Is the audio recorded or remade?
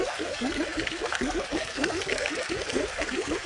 remade